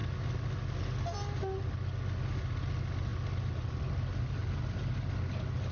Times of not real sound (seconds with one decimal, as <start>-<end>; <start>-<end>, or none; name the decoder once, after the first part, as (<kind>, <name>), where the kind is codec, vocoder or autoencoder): none